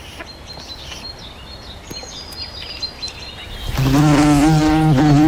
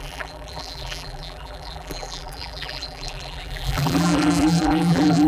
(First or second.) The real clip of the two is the first